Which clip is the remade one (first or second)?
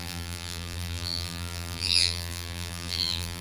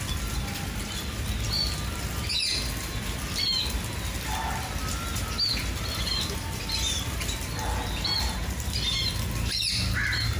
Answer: first